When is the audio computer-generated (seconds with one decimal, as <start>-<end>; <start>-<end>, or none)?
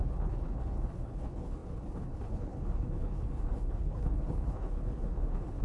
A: 0.0-5.6